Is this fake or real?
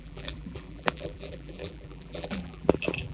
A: fake